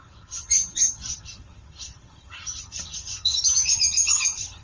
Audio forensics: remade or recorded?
remade